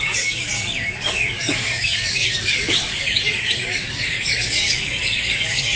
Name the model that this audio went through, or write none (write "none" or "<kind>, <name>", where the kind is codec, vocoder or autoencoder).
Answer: codec, DAC